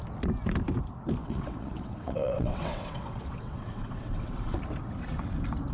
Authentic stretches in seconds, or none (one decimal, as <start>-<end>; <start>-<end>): 0.0-1.2; 4.6-5.7